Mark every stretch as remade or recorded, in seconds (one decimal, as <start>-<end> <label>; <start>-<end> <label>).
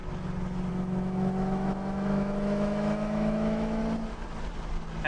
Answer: 0.0-0.7 recorded; 0.7-3.8 remade; 3.8-5.1 recorded